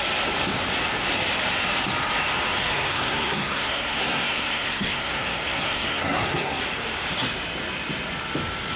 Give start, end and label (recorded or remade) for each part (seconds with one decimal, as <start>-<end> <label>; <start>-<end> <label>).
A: 0.0-2.7 recorded; 2.7-6.6 remade; 6.6-8.8 recorded